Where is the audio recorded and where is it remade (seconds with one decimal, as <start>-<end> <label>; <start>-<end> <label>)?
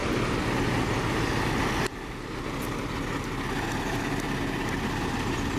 0.0-5.6 recorded